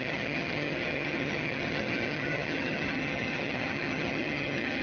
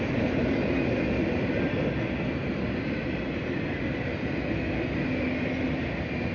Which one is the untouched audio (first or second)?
second